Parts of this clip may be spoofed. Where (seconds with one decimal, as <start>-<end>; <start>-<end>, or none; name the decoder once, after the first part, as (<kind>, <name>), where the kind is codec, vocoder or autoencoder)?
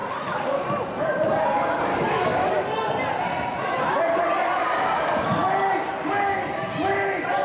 1.9-2.5 (codec, DAC); 4.6-5.2